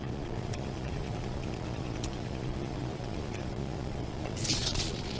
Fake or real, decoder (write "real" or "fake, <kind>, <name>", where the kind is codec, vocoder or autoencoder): fake, vocoder, Vocos